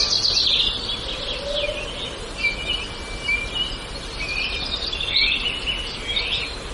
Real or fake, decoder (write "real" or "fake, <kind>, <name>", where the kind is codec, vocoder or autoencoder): real